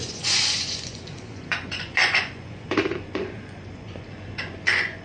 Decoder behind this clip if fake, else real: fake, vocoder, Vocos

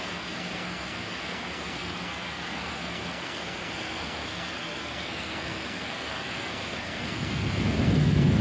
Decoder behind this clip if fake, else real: fake, codec, SNAC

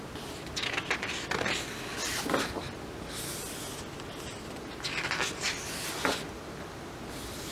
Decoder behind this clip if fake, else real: real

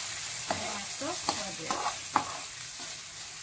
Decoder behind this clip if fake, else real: real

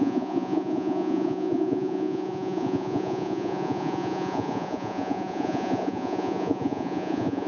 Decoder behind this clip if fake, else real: fake, vocoder, Vocos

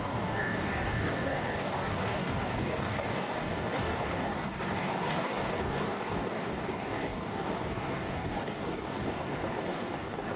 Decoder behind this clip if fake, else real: fake, codec, DAC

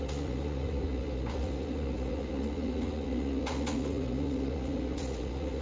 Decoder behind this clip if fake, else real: fake, vocoder, Vocos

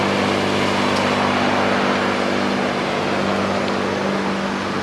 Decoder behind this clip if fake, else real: real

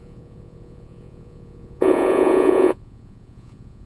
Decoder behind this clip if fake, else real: fake, vocoder, Vocos